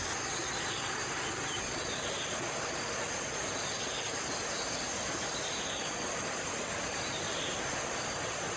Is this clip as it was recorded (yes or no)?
yes